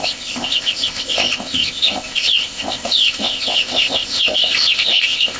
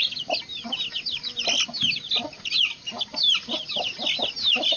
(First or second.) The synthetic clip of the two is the first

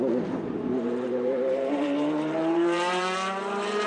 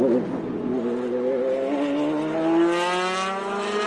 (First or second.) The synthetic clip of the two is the first